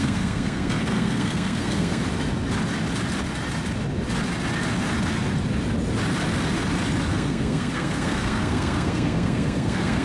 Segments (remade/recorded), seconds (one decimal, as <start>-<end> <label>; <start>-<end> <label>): 0.0-2.0 remade; 2.0-7.1 recorded; 7.1-10.0 remade